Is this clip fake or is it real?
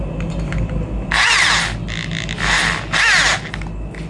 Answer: real